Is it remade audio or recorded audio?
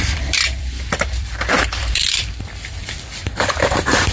remade